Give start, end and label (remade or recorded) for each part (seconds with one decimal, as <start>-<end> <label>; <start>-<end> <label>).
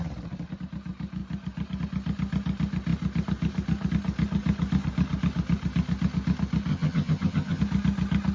0.0-6.7 recorded; 6.7-7.6 remade; 7.6-8.3 recorded